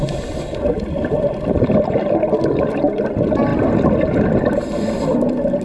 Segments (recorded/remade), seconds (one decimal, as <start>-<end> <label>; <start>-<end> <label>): 0.0-5.6 remade